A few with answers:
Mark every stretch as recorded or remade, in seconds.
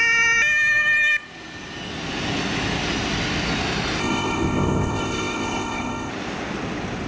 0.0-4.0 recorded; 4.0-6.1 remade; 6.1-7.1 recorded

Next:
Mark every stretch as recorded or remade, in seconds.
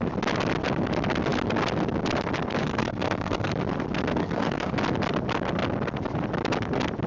0.0-2.6 recorded; 2.6-3.5 remade; 3.5-4.2 recorded; 4.2-4.7 remade; 4.7-7.1 recorded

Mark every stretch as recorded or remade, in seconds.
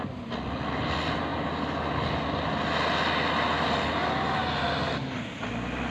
0.0-5.9 recorded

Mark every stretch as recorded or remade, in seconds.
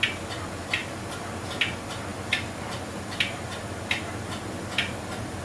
0.0-5.4 recorded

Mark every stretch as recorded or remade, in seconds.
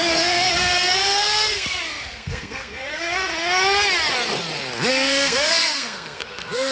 0.0-3.3 remade; 3.3-4.9 recorded; 4.9-6.7 remade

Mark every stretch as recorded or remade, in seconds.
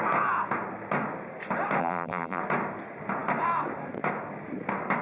0.0-1.8 recorded; 1.8-2.4 remade; 2.4-5.0 recorded